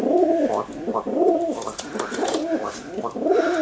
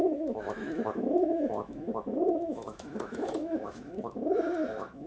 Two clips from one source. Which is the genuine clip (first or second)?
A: first